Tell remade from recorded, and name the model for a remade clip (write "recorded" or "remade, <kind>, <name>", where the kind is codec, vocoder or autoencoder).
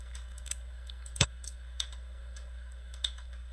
remade, codec, SNAC